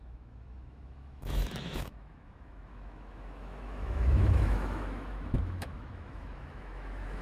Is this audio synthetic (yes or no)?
yes